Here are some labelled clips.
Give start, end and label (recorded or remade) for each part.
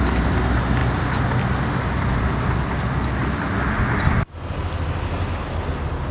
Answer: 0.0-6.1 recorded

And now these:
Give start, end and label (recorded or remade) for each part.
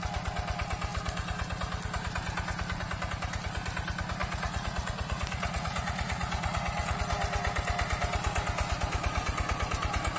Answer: 0.0-4.2 recorded; 4.2-7.0 remade; 7.0-10.2 recorded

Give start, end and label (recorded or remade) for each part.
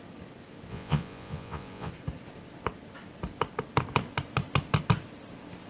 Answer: 0.0-0.7 recorded; 0.7-1.9 remade; 1.9-5.7 recorded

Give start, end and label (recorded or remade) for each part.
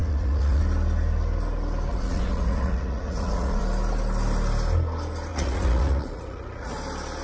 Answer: 0.0-0.6 remade; 0.6-1.9 recorded; 1.9-3.6 remade; 3.6-5.3 recorded; 5.3-6.7 remade; 6.7-7.2 recorded